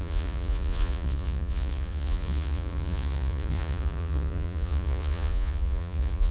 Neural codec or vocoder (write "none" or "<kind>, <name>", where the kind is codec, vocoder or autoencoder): vocoder, Vocos